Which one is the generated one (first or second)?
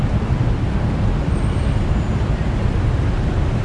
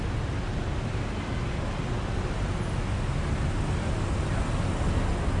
first